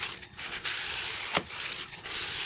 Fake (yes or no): no